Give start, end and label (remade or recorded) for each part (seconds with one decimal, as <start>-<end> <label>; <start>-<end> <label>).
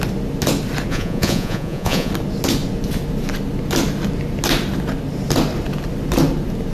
0.0-0.9 recorded; 0.9-2.1 remade; 2.1-6.7 recorded